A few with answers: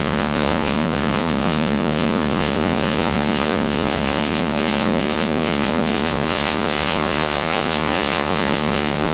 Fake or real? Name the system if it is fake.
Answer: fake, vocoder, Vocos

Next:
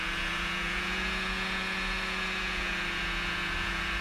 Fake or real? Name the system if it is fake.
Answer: fake, vocoder, Vocos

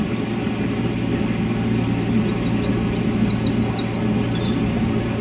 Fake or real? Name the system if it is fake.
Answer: real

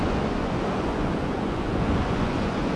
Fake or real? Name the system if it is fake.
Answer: fake, vocoder, Vocos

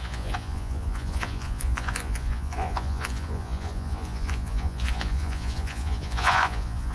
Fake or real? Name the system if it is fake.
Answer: fake, vocoder, Vocos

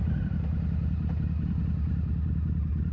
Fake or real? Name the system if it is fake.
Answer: real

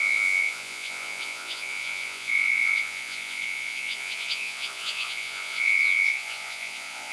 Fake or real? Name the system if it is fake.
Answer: fake, vocoder, Vocos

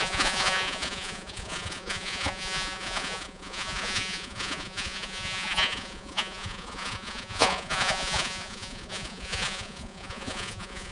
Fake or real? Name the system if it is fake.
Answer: fake, vocoder, Vocos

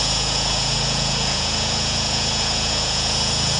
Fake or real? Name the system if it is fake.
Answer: fake, vocoder, Vocos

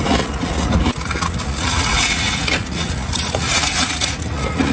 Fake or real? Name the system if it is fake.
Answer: fake, vocoder, Vocos